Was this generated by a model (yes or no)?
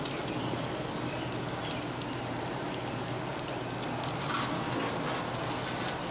no